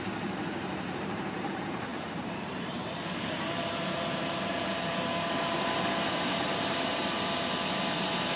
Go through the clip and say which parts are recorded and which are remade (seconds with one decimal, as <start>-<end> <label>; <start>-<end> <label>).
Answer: 0.0-8.4 remade